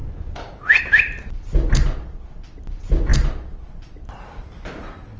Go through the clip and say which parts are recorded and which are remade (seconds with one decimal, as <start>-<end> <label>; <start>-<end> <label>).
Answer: 0.0-5.2 recorded